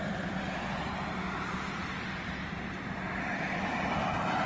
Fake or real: real